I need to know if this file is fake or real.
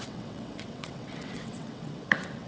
fake